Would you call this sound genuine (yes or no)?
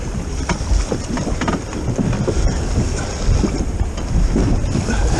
yes